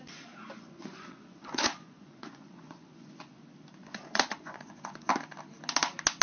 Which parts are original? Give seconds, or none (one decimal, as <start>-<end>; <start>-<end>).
0.0-0.5; 3.4-3.8; 5.1-6.2